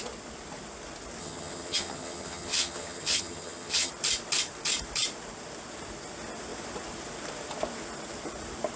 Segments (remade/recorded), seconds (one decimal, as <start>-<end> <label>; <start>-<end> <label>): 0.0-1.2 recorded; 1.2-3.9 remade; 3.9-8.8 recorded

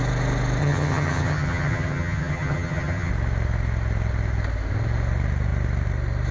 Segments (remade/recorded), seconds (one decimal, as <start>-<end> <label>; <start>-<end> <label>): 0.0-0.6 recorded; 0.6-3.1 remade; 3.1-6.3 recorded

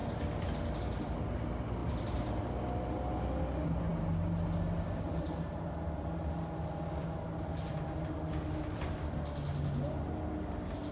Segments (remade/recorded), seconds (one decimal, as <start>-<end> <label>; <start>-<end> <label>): 0.0-10.9 recorded

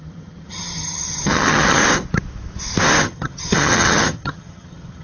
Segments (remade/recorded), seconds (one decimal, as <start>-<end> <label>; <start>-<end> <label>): 0.0-1.8 remade; 1.8-3.0 recorded; 3.0-5.0 remade